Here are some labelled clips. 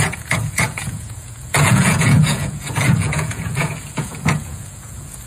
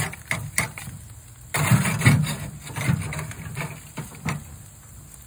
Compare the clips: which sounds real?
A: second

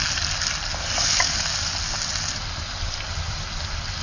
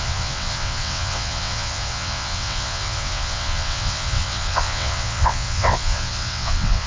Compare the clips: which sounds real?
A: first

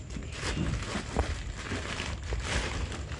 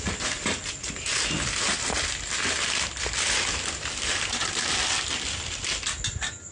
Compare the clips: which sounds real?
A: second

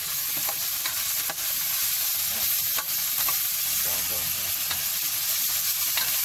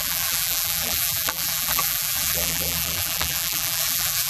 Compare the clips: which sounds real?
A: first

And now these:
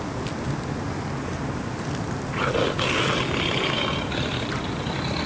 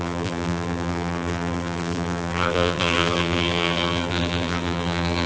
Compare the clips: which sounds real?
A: first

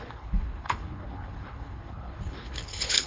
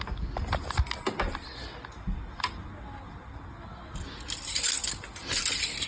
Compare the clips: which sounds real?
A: second